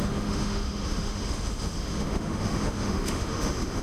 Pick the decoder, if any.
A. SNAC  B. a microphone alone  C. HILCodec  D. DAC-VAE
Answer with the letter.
D